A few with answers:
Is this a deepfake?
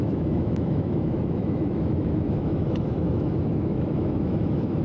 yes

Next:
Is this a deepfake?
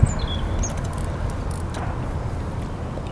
no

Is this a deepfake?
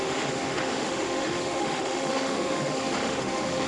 yes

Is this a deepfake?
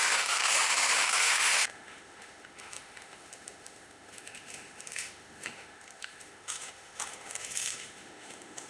yes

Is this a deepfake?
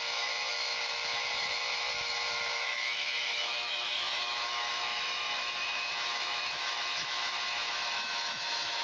yes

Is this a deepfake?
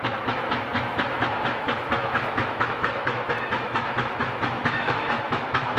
yes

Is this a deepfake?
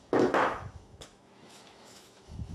yes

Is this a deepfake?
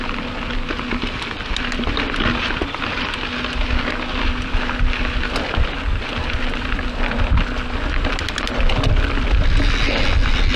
no